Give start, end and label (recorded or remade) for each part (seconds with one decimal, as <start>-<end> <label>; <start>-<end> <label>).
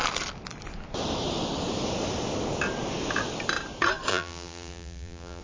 0.0-4.1 recorded; 4.1-5.4 remade